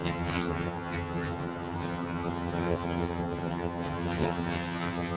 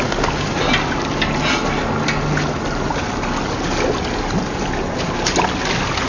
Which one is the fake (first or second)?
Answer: first